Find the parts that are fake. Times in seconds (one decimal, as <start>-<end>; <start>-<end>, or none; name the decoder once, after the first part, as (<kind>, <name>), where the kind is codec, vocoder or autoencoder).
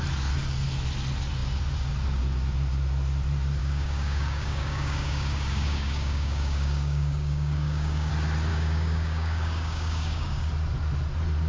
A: 3.6-8.1 (codec, DAC); 8.5-10.5